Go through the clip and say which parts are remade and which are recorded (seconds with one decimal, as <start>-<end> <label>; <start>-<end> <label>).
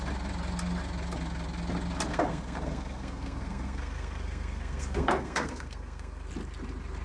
0.0-2.1 recorded; 2.1-6.3 remade; 6.3-7.0 recorded